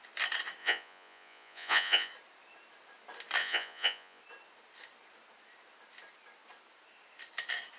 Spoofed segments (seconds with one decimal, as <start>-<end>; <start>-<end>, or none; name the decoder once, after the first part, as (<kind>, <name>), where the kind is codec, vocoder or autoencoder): 0.6-2.1 (vocoder, Vocos); 3.4-4.2